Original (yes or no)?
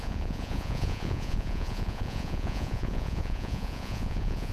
no